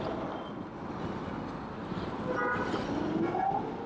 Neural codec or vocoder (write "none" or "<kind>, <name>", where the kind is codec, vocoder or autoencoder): none